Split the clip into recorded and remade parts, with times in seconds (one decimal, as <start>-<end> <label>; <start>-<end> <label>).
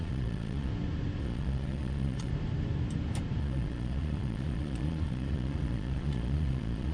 0.0-0.7 remade; 0.7-1.2 recorded; 1.2-2.3 remade; 2.3-3.4 recorded; 3.4-6.9 remade